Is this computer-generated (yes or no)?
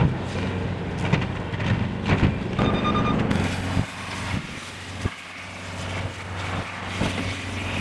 no